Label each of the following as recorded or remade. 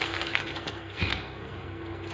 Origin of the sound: remade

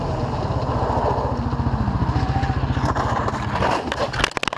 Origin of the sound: recorded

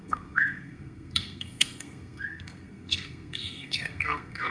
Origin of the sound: remade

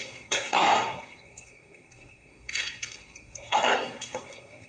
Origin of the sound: remade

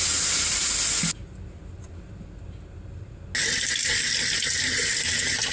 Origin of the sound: recorded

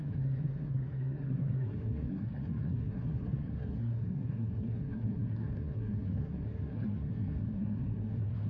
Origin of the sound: remade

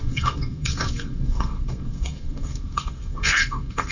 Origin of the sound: remade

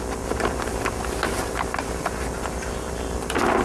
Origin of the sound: recorded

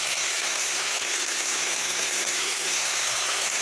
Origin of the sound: remade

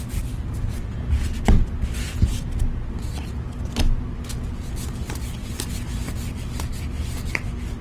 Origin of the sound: recorded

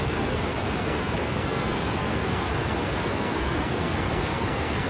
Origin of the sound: remade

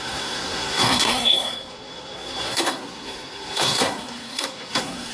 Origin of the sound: remade